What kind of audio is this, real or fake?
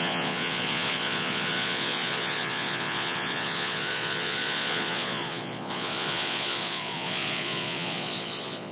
fake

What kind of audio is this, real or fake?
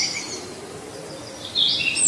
real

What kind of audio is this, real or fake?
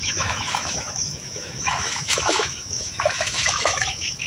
fake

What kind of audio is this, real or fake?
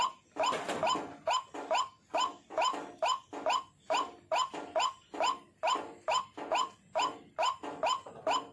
real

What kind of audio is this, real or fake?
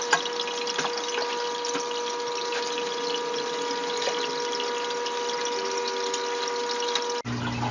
real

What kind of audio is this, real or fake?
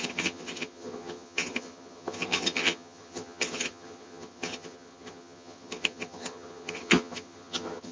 fake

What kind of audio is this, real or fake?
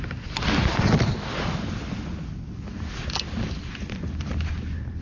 real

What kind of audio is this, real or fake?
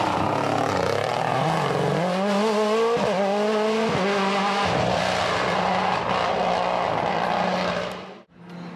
real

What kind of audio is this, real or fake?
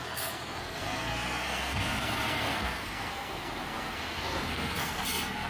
fake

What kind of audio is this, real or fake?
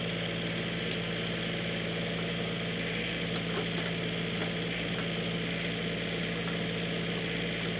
real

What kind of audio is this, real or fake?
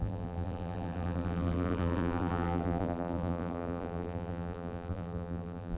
fake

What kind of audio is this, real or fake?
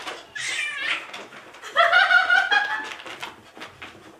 real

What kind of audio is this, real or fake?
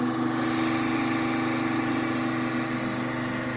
real